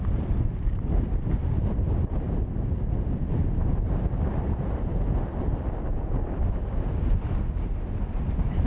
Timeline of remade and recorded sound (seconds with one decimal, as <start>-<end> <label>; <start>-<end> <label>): 0.0-8.7 recorded